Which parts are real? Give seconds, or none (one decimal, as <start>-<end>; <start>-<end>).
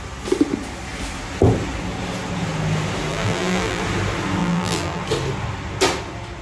0.0-3.1; 3.8-4.4; 5.0-6.4